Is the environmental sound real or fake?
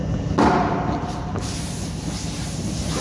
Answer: real